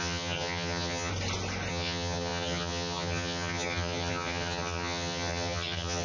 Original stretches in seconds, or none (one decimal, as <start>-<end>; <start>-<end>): 1.1-1.7